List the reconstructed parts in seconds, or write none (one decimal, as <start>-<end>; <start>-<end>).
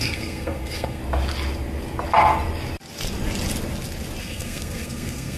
0.0-1.0; 4.2-5.4